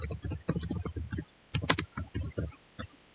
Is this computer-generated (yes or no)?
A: no